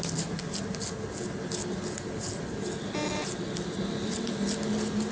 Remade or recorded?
recorded